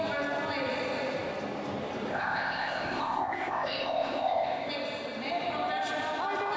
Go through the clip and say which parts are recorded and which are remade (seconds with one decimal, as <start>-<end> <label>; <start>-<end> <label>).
0.0-2.1 recorded; 2.1-4.7 remade; 4.7-6.6 recorded

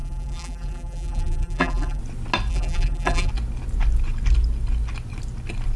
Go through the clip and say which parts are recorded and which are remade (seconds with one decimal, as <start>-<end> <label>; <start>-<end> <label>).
0.0-2.0 remade; 2.0-2.5 recorded; 2.5-3.3 remade; 3.3-5.8 recorded

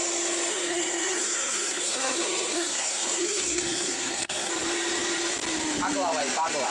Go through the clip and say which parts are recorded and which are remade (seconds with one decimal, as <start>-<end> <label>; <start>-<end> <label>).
0.0-0.5 recorded; 0.5-4.5 remade; 4.5-6.7 recorded